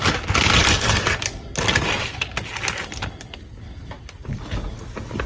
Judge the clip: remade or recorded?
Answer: recorded